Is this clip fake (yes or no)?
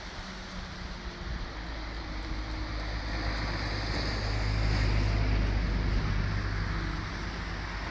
no